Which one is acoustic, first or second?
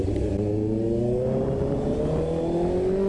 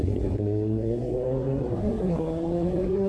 first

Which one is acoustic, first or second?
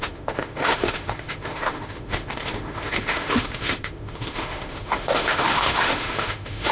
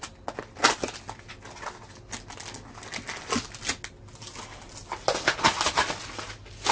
second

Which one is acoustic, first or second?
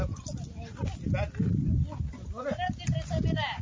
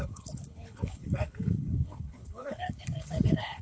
first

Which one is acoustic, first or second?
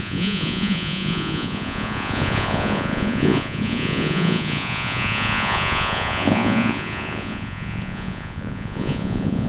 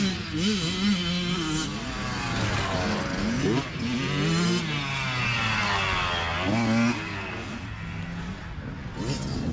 second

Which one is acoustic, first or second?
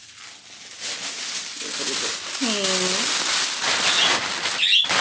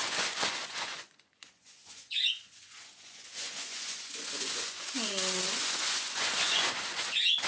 first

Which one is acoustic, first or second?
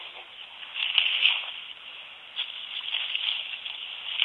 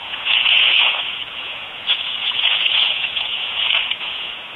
first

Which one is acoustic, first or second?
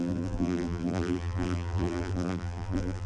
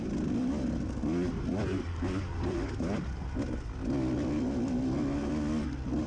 second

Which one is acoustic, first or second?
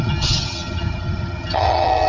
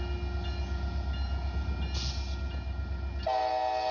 second